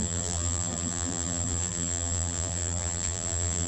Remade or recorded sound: remade